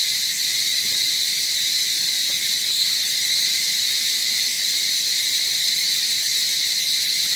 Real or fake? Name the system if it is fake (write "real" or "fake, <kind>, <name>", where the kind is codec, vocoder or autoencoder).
real